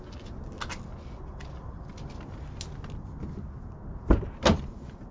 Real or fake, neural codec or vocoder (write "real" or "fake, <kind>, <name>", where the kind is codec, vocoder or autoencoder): real